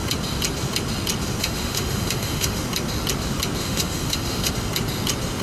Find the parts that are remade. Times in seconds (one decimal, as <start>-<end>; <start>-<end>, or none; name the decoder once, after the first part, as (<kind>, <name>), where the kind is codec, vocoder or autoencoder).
1.4-2.6 (autoencoder, DAC-VAE); 3.6-4.5